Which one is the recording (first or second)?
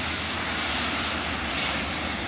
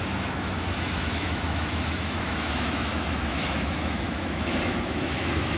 first